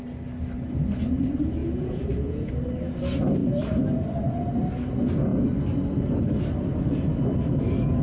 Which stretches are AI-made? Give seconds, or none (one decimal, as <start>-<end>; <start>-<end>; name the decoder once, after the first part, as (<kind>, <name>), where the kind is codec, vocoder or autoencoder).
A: 1.6-2.5 (vocoder, Vocos)